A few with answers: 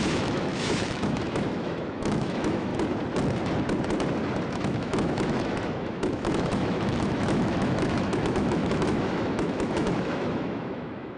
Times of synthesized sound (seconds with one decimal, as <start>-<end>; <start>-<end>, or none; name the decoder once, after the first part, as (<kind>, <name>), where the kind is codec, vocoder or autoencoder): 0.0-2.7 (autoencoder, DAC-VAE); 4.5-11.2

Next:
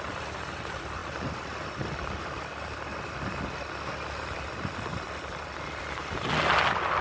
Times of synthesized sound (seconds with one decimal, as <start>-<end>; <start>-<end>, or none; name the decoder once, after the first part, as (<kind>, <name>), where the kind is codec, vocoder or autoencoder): none

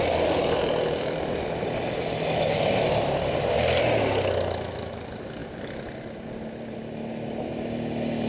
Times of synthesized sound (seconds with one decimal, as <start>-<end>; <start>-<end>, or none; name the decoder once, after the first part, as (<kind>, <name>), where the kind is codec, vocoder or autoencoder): none

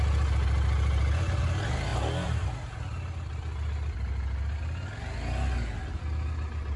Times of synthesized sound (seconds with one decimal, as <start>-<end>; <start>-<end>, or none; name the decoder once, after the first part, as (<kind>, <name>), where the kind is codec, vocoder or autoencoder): none

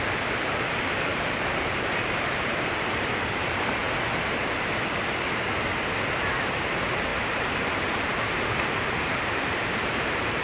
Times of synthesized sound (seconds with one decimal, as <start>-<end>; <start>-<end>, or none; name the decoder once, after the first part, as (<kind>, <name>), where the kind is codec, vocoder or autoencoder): 0.0-3.8 (vocoder, BigVGAN v2); 6.6-7.1; 7.8-10.4